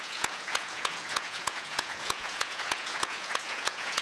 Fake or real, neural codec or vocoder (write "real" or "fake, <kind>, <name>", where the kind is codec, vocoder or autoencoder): fake, vocoder, Vocos